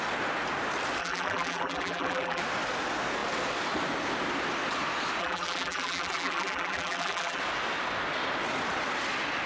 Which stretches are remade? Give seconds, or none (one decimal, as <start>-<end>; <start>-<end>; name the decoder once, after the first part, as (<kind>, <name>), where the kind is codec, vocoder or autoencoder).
1.0-2.4 (vocoder, BigVGAN v2); 5.2-7.4